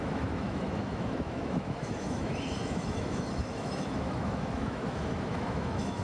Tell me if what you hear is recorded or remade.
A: remade